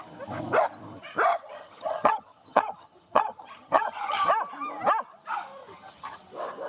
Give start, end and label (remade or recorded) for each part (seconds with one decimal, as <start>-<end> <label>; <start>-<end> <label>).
0.0-1.3 recorded; 1.3-4.3 remade; 4.3-5.6 recorded; 5.6-6.3 remade; 6.3-6.7 recorded